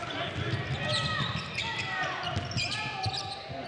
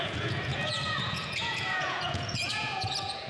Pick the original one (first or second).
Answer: first